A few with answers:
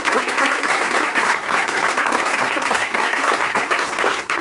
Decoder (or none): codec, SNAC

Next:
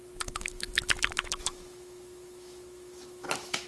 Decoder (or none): autoencoder, DAC-VAE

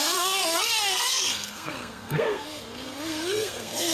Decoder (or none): codec, SNAC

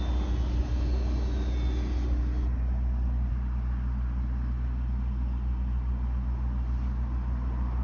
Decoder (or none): none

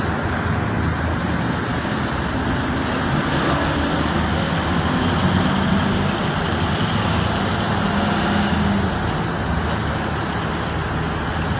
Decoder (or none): none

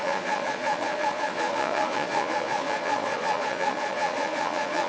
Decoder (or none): vocoder, Vocos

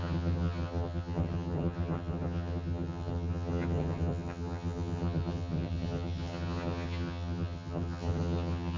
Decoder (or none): vocoder, HiFi-GAN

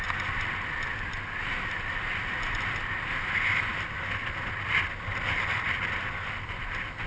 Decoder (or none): none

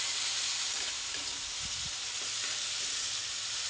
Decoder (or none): none